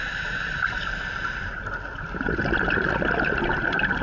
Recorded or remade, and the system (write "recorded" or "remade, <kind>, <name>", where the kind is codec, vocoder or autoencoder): recorded